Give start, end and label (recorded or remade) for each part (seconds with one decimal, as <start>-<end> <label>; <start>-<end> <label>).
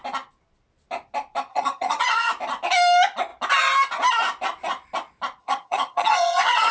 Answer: 0.0-1.5 recorded; 1.5-2.3 remade; 2.3-5.4 recorded; 5.4-6.7 remade